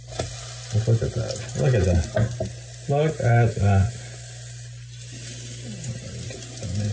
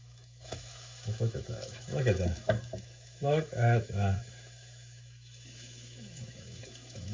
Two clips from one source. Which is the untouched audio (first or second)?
first